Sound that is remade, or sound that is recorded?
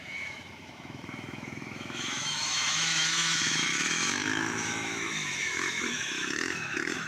remade